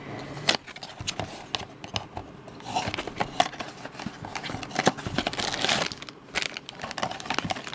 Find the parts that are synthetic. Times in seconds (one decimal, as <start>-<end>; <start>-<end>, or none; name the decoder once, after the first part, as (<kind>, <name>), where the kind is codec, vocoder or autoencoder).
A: none